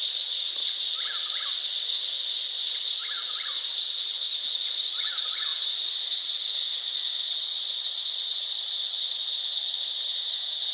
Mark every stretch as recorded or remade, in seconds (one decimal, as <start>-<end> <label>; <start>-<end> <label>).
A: 0.0-0.6 remade; 0.6-3.0 recorded; 3.0-5.5 remade; 5.5-8.5 recorded; 8.5-10.7 remade